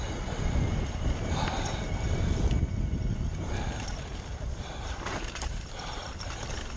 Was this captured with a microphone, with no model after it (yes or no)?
no